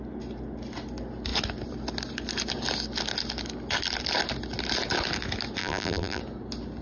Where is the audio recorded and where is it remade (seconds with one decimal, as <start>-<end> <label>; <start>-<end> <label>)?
0.0-5.6 recorded; 5.6-6.2 remade; 6.2-6.8 recorded